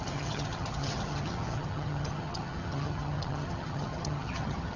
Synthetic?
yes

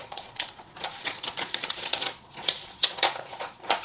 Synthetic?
yes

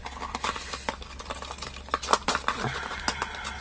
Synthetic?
no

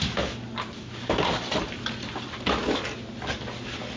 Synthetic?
no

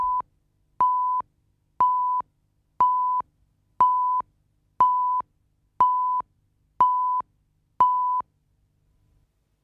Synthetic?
no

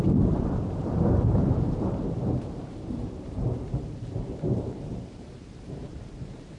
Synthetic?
yes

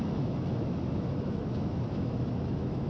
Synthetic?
yes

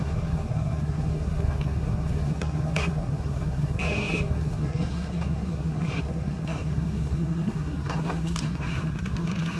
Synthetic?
yes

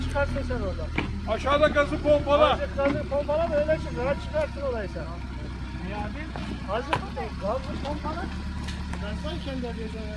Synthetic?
no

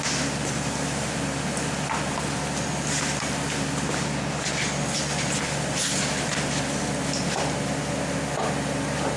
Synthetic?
no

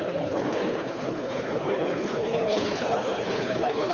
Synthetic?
yes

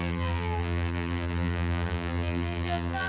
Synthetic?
yes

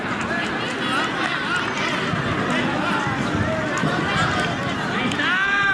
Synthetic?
no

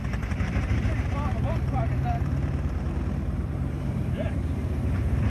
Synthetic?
yes